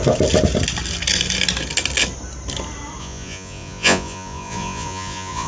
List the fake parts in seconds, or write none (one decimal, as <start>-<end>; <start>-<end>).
3.0-5.5